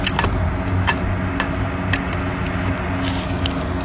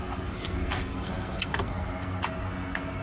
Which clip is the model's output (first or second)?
second